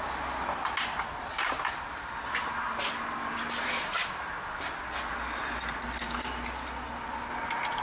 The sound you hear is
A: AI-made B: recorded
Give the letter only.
B